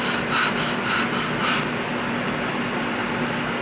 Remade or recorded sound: recorded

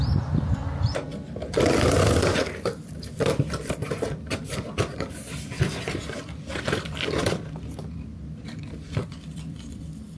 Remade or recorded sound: remade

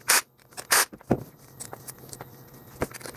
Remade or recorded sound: remade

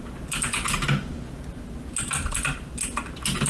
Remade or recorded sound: recorded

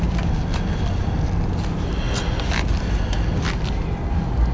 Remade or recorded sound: recorded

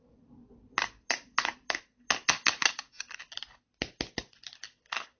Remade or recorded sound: recorded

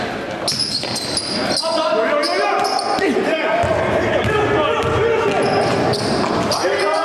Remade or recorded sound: recorded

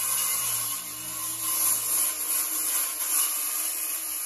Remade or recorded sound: recorded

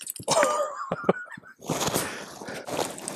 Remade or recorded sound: recorded